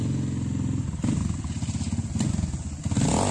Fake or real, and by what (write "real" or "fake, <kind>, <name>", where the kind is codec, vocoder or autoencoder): real